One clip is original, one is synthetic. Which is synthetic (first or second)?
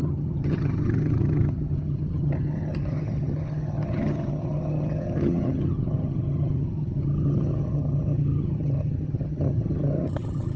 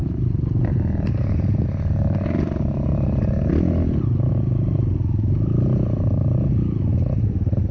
first